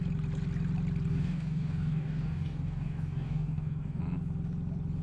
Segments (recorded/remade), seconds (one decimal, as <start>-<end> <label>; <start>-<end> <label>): 0.0-1.1 recorded; 1.1-4.0 remade; 4.0-5.0 recorded

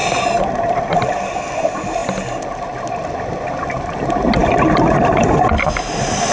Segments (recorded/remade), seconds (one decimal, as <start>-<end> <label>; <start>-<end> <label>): 0.0-6.3 recorded

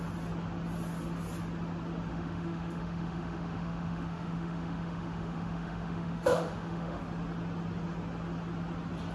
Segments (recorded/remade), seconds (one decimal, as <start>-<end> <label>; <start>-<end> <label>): 0.0-2.1 recorded; 2.1-7.0 remade; 7.0-9.1 recorded

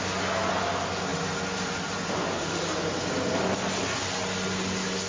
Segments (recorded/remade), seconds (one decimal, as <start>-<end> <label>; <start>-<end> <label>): 0.0-5.1 recorded

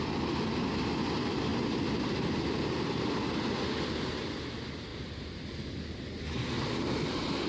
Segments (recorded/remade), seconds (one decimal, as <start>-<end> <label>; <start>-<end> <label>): 0.0-7.5 recorded

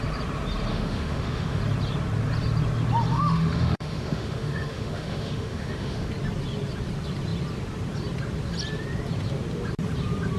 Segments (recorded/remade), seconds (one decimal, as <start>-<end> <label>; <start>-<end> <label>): 0.0-0.7 recorded; 0.7-1.6 remade; 1.6-3.1 recorded; 3.1-6.1 remade; 6.1-10.4 recorded

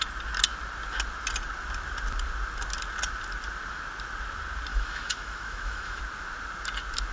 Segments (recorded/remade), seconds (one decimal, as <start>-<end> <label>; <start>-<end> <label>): 0.0-4.7 recorded; 4.7-6.0 remade; 6.0-7.1 recorded